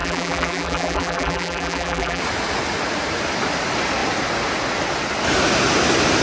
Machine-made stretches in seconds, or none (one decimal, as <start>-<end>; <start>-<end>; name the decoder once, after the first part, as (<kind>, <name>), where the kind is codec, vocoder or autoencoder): 0.0-2.2 (vocoder, BigVGAN v2)

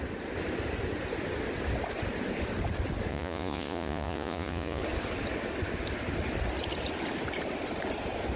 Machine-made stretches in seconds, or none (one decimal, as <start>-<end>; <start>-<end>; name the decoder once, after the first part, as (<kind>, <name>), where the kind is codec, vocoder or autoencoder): 3.1-4.8 (vocoder, Vocos)

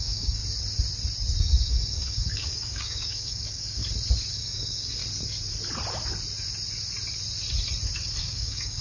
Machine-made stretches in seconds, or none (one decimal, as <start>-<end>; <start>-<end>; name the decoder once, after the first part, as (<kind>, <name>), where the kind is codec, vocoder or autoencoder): 0.0-0.4 (codec, DAC); 1.4-3.8; 4.3-5.0; 8.2-8.8

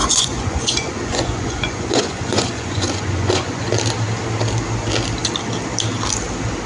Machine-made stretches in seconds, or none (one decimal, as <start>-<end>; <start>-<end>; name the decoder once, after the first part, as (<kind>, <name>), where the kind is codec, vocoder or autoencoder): 0.0-3.6 (vocoder, Vocos)

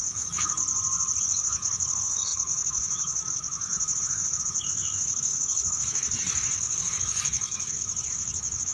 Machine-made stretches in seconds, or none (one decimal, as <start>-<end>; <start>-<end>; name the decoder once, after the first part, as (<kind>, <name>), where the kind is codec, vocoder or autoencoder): 0.0-0.6 (autoencoder, DAC-VAE); 1.2-8.7